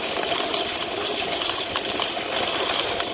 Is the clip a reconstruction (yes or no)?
no